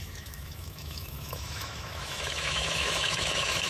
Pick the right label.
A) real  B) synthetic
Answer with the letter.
B